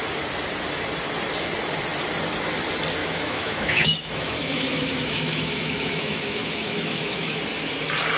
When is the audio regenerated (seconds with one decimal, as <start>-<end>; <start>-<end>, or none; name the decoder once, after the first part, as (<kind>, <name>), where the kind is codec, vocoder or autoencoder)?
3.0-7.4 (autoencoder, DAC-VAE)